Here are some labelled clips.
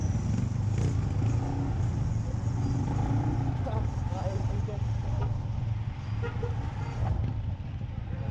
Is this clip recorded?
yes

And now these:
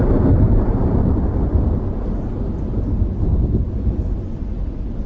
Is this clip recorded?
yes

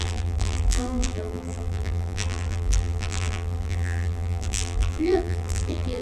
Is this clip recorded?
no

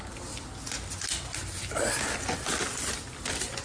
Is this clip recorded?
yes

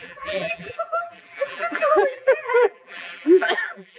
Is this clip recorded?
no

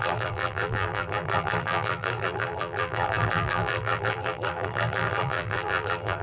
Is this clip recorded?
no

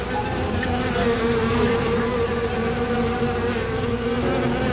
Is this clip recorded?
yes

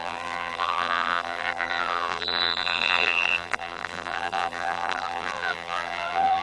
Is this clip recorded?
no